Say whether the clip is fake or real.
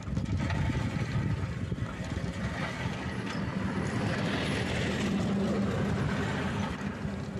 real